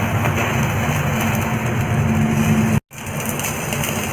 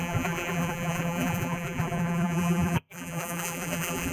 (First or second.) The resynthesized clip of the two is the second